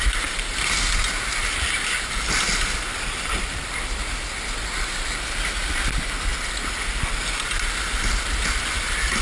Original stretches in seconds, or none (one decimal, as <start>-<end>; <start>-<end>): 0.0-9.2